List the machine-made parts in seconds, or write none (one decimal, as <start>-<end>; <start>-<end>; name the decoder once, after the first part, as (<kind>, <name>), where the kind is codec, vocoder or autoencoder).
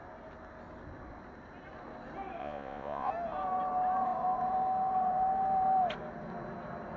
2.4-3.1 (vocoder, Vocos)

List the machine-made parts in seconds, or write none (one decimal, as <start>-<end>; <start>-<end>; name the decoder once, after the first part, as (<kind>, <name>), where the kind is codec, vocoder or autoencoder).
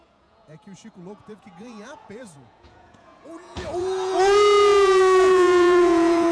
0.0-6.3 (vocoder, Vocos)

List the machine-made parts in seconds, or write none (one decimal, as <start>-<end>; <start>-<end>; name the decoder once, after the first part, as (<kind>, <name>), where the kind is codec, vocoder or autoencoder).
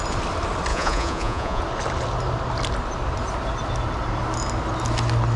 0.7-1.6 (vocoder, Vocos)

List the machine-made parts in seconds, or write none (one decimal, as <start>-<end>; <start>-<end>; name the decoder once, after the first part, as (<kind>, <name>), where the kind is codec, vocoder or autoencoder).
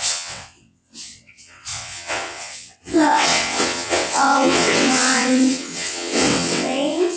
0.0-7.2 (vocoder, WaveNeXt)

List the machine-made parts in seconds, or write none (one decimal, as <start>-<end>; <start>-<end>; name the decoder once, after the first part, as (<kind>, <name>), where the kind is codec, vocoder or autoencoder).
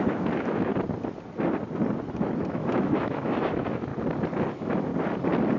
0.0-0.7 (autoencoder, DAC-VAE); 2.1-3.9; 4.5-4.9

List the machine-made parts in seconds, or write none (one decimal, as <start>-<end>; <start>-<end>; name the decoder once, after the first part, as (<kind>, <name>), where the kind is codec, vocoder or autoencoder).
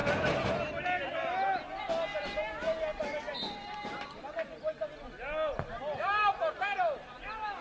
0.0-0.5 (vocoder, BigVGAN v2); 2.1-4.6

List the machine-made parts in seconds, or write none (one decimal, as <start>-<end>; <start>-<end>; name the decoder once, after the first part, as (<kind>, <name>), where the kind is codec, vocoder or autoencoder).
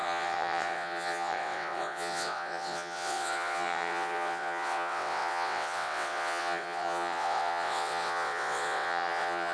0.0-9.5 (vocoder, WaveNeXt)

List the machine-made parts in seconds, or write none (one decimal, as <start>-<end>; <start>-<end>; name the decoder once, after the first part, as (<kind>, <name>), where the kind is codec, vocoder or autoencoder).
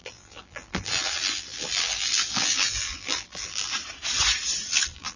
0.0-3.7 (vocoder, BigVGAN v2); 4.7-5.2